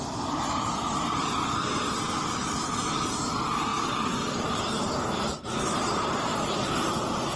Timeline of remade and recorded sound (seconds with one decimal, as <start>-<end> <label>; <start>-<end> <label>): 0.0-7.4 recorded